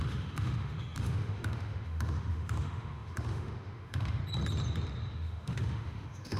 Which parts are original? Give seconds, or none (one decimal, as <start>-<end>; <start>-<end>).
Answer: 4.2-5.1

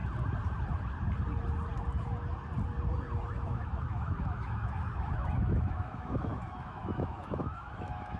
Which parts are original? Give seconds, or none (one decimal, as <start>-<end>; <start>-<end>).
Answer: 0.0-3.3

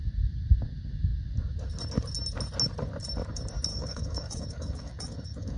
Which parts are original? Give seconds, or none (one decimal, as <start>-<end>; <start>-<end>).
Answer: 0.0-3.7

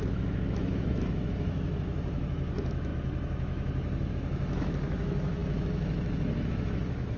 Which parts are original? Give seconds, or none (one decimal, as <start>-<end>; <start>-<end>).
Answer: none